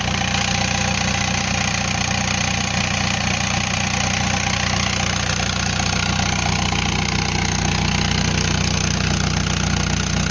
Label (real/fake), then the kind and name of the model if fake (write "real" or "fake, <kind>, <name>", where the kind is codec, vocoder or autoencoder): real